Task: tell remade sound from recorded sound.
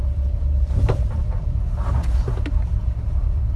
remade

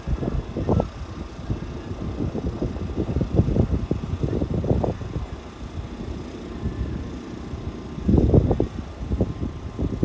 recorded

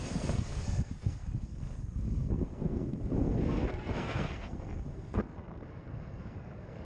remade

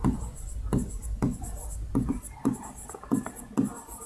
recorded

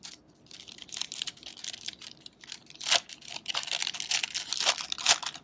recorded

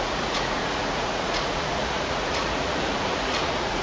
remade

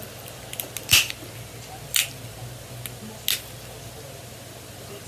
recorded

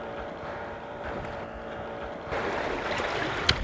recorded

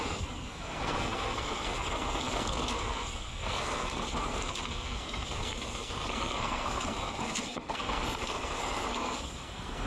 remade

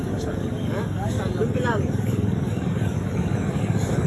remade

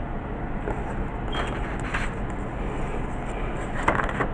recorded